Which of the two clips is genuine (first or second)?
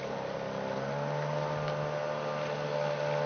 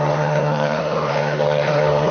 first